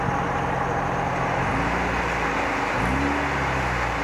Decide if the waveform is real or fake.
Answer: real